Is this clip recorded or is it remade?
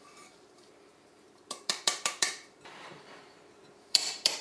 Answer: remade